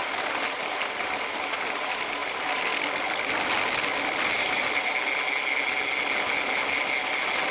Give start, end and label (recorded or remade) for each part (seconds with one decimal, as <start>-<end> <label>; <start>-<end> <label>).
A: 0.0-2.2 recorded; 2.2-3.5 remade; 3.5-3.9 recorded; 3.9-4.9 remade; 4.9-7.5 recorded